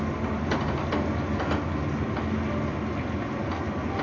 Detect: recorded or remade recorded